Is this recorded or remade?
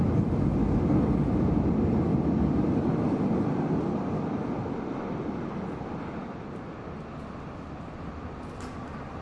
recorded